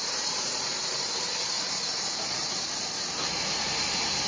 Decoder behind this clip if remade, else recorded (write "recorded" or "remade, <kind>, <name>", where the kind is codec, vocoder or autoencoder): remade, vocoder, BigVGAN v2